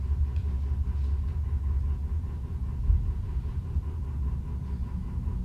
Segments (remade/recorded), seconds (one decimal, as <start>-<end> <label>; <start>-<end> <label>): 0.0-5.4 recorded